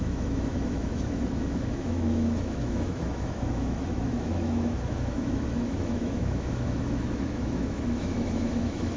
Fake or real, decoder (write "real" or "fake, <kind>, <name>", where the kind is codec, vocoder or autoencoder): fake, autoencoder, DAC-VAE